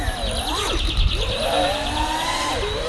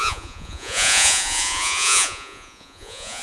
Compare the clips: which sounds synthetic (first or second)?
second